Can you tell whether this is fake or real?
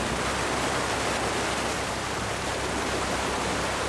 real